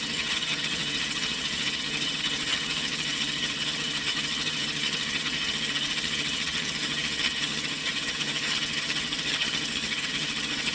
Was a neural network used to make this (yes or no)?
yes